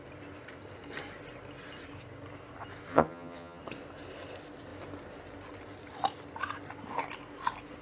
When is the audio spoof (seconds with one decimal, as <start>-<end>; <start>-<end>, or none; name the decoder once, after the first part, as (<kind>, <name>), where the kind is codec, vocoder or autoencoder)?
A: 2.9-3.6 (vocoder, HiFi-GAN)